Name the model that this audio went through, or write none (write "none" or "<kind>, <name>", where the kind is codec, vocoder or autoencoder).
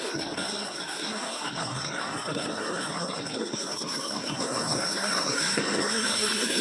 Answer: codec, SNAC